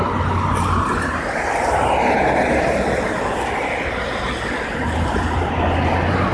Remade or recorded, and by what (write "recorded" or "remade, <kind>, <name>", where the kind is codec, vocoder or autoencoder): recorded